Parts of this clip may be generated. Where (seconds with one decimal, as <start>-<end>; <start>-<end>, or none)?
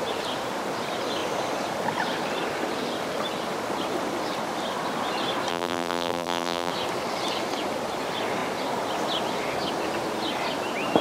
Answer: 5.5-6.7